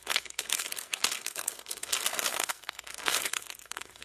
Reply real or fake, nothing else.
fake